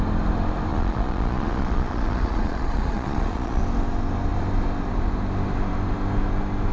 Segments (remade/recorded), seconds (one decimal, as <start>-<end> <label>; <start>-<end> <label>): 0.0-0.7 recorded; 0.7-3.6 remade; 3.6-6.7 recorded